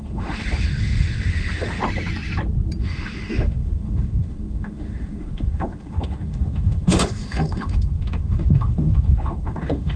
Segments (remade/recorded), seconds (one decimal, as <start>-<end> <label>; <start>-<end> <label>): 0.0-1.8 remade; 1.8-2.8 recorded; 2.8-10.0 remade